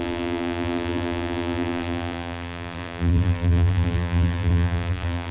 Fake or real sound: fake